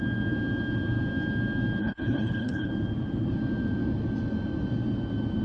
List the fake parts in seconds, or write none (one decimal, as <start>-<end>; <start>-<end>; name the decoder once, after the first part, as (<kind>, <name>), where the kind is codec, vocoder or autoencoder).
1.8-2.7 (codec, HILCodec)